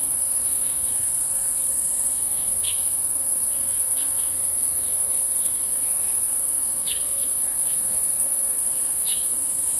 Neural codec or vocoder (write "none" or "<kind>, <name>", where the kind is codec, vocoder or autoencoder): codec, SNAC